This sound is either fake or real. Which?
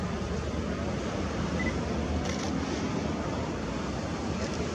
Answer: real